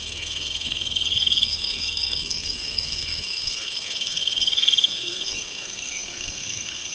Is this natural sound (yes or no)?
no